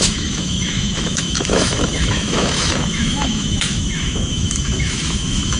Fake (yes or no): yes